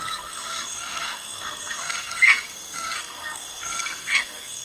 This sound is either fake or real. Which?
fake